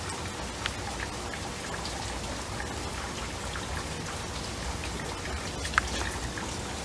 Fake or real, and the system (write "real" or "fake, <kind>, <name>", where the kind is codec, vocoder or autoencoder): real